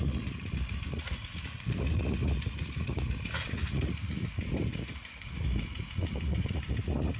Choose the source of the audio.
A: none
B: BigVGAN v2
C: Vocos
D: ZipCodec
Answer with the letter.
C